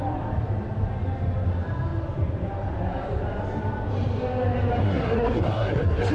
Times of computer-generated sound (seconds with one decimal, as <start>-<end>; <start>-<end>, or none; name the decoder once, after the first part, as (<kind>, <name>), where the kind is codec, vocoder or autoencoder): 4.8-6.1 (codec, SNAC)